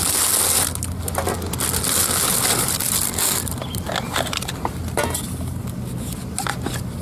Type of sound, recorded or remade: recorded